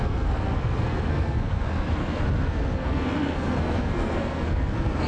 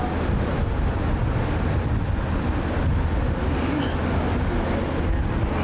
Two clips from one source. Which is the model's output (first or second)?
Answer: first